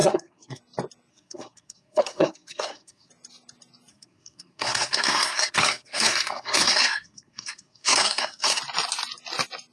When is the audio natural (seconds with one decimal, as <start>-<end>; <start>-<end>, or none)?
0.6-1.1; 3.1-3.9; 8.6-9.7